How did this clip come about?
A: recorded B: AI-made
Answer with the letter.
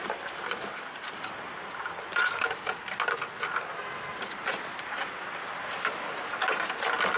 A